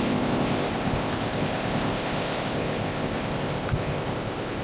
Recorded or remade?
remade